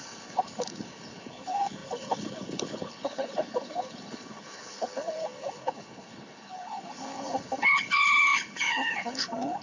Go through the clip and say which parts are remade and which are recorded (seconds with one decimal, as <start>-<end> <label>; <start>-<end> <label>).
0.0-9.6 remade